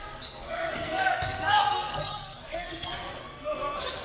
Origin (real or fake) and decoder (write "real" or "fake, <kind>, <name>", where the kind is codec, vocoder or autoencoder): fake, codec, SNAC